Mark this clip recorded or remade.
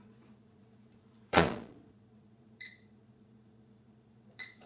remade